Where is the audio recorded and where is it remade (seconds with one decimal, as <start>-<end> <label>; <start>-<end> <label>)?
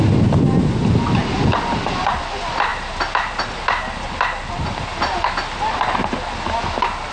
0.0-7.1 recorded